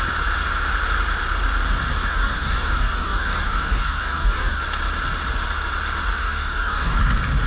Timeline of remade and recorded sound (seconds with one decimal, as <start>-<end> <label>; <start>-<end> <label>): 0.0-1.9 recorded; 1.9-4.6 remade; 4.6-6.2 recorded; 6.2-7.0 remade; 7.0-7.5 recorded